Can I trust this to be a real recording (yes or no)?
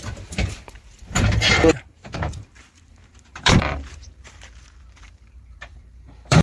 no